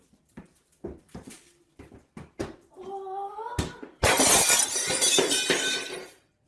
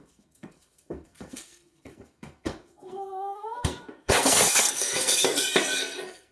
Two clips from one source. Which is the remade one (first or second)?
second